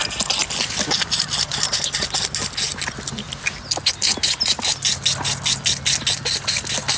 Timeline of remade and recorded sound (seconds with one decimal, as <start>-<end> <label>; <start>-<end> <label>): 0.0-7.0 recorded